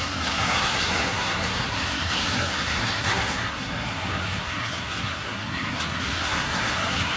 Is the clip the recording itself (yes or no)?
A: no